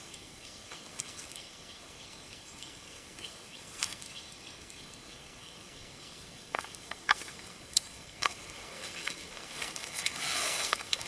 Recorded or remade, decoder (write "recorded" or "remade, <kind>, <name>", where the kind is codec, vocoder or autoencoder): remade, codec, SNAC